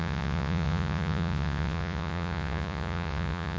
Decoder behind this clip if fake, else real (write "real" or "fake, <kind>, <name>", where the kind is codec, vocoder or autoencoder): fake, vocoder, Vocos